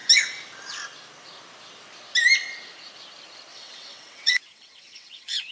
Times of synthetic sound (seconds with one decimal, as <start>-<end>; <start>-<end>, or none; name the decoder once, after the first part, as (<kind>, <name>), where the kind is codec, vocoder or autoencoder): 3.5-5.5 (vocoder, WaveNeXt)